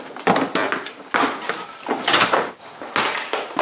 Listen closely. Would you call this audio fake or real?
real